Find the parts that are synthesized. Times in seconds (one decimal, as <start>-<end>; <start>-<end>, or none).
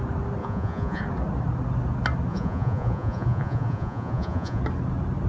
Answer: 0.4-1.0; 2.3-4.6